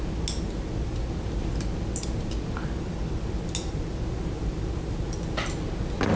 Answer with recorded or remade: recorded